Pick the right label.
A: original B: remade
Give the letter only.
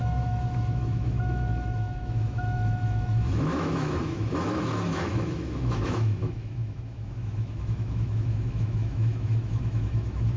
B